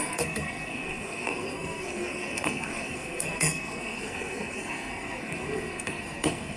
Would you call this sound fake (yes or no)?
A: yes